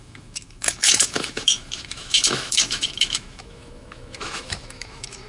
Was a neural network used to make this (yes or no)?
yes